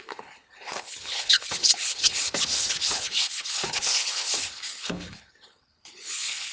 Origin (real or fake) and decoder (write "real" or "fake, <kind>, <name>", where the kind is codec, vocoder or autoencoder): fake, codec, HILCodec